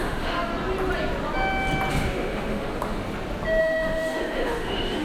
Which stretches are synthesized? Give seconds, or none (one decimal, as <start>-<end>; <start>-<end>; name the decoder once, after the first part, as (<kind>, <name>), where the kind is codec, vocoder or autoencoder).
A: 0.0-0.5 (autoencoder, DAC-VAE); 1.9-3.0; 3.6-5.0